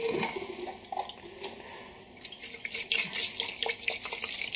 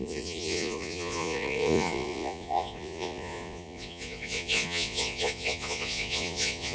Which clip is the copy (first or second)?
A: second